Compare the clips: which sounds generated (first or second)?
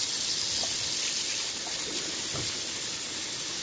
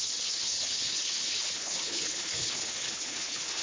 second